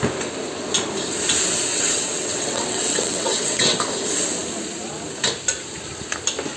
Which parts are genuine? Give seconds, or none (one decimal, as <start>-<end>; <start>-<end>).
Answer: 0.0-1.7; 3.8-6.6